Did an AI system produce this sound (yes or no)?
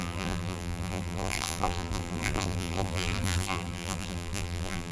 yes